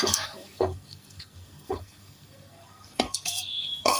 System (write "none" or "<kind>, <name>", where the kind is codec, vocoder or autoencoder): codec, SNAC